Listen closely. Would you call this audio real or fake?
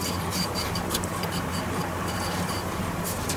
fake